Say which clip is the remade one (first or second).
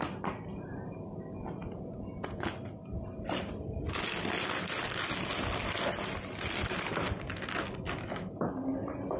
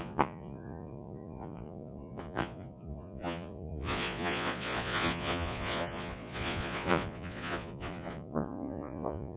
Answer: second